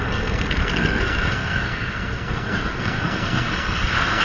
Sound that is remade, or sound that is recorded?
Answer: remade